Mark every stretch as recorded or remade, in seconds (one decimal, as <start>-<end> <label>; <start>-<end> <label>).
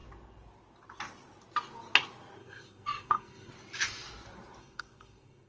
0.0-2.4 recorded; 2.4-3.5 remade; 3.5-4.6 recorded; 4.6-5.5 remade